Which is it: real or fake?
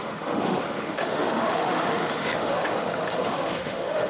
fake